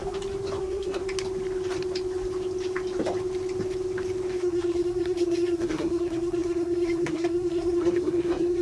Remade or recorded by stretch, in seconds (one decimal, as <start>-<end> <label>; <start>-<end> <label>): 0.0-0.6 recorded; 0.6-1.0 remade; 1.0-4.4 recorded; 4.4-8.6 remade